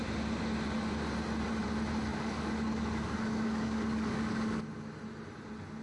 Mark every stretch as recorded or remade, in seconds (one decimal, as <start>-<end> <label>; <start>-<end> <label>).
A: 0.0-2.1 recorded; 2.1-4.6 remade; 4.6-5.8 recorded